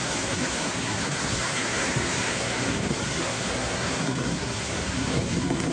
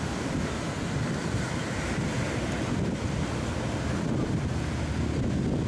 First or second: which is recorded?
second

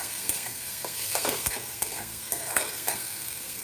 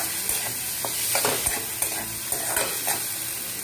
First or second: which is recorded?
second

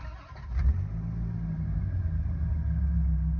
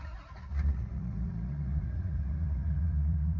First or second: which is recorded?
first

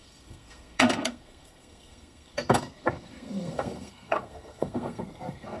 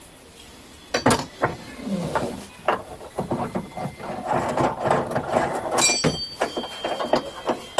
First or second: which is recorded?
second